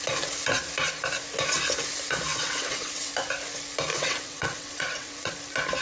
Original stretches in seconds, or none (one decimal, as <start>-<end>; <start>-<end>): 0.0-2.3; 3.1-3.9; 5.3-5.8